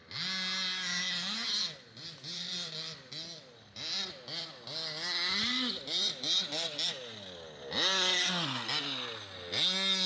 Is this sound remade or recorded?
recorded